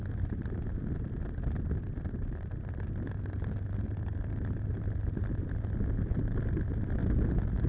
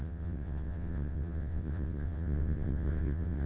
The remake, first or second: second